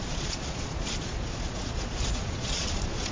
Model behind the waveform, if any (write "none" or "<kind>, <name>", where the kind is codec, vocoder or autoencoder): vocoder, Vocos